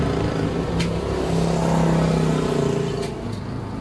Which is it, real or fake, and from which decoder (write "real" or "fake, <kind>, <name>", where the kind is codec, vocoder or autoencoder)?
real